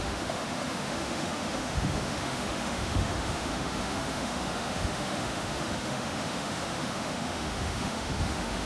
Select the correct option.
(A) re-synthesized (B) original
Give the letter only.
A